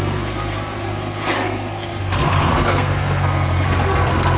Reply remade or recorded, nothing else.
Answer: remade